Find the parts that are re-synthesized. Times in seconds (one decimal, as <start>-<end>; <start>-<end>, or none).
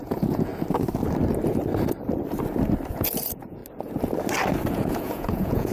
0.0-0.5; 2.9-3.6; 4.7-5.7